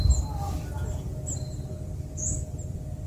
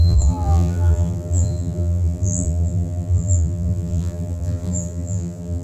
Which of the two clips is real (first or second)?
first